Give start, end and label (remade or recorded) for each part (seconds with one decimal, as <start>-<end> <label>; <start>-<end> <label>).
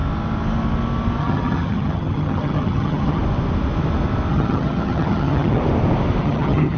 0.0-1.2 recorded; 1.2-3.2 remade; 3.2-4.3 recorded; 4.3-5.6 remade; 5.6-6.2 recorded; 6.2-6.8 remade